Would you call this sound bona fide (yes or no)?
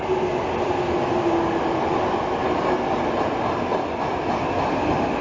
yes